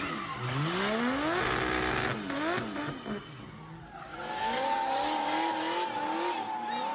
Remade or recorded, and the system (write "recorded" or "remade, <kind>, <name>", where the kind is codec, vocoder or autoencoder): recorded